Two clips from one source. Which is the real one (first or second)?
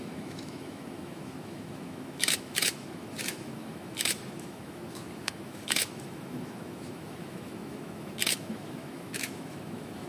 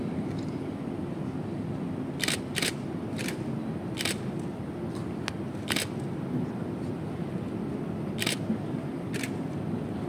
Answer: second